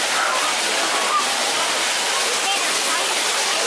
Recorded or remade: recorded